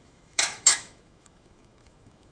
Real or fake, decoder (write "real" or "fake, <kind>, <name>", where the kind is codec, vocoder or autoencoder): fake, autoencoder, DAC-VAE